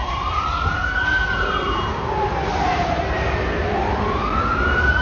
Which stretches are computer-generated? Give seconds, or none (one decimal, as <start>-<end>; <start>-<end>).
none